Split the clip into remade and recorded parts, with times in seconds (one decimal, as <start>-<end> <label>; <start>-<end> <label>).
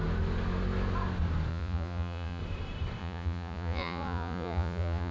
0.0-1.5 recorded; 1.5-2.4 remade; 2.4-3.0 recorded; 3.0-5.1 remade